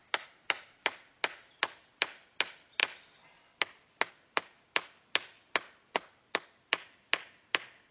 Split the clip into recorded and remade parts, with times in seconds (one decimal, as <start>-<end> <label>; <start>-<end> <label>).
0.0-7.9 recorded